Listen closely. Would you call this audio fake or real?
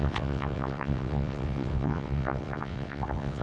fake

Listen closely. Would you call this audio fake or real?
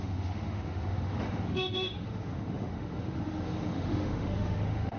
fake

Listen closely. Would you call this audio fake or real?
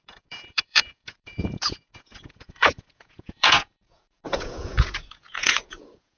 fake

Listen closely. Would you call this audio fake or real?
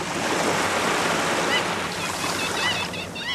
real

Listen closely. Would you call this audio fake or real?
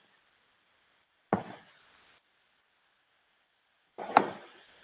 real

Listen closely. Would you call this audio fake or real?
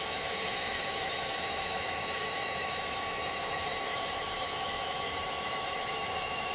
fake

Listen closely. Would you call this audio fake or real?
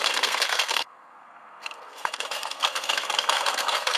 fake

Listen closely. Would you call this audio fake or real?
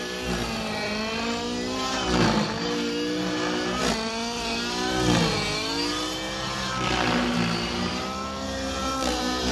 real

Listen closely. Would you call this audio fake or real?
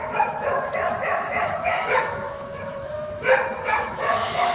fake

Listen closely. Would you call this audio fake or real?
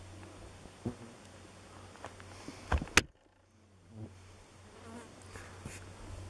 real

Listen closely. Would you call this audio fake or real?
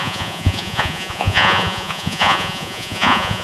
fake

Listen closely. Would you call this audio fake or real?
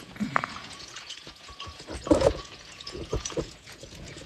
fake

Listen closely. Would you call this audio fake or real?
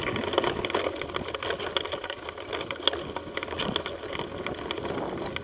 real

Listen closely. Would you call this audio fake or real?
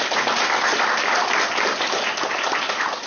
real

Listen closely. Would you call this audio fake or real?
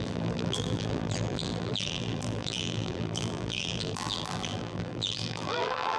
fake